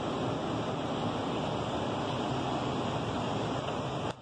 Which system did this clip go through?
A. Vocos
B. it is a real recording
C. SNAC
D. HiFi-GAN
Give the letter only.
B